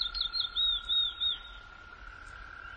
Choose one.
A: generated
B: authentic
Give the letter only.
B